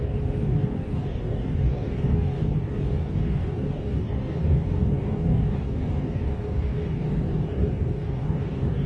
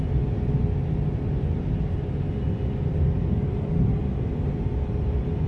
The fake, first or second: first